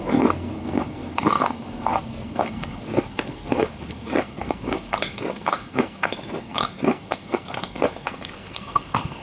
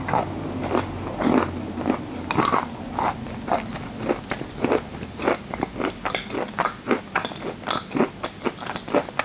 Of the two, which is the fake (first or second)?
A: first